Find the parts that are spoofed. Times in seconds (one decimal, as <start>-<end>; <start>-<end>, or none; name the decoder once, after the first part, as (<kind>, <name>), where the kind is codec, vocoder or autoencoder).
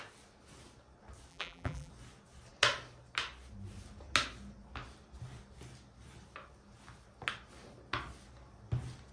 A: 1.3-1.9 (vocoder, BigVGAN v2)